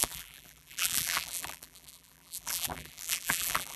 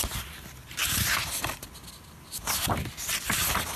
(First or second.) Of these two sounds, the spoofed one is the first